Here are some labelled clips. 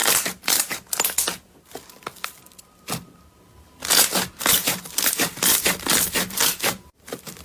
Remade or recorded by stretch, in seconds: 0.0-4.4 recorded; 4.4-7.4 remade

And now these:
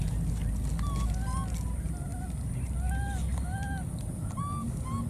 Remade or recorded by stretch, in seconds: 0.0-5.1 recorded

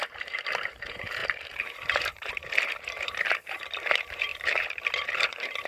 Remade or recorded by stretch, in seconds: 0.0-5.7 remade

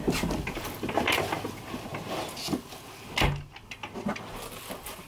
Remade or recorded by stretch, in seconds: 0.0-1.9 remade; 1.9-5.1 recorded

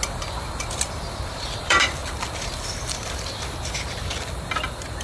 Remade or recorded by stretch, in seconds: 0.0-0.5 recorded; 0.5-2.0 remade; 2.0-5.0 recorded

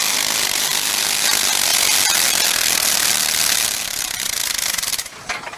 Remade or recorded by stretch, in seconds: 0.0-1.7 remade; 1.7-3.7 recorded; 3.7-5.6 remade